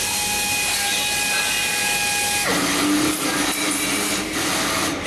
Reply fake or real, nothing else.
real